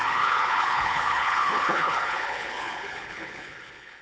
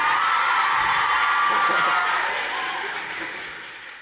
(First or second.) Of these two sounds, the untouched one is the second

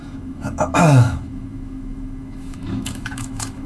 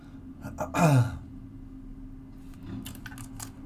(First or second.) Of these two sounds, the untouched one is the second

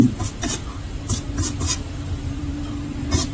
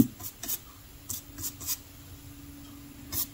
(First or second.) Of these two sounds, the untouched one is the second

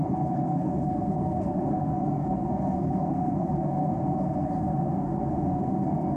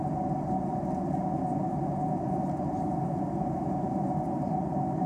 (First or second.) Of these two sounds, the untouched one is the second